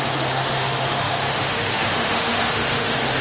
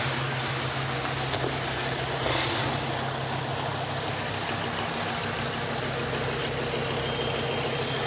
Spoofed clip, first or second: first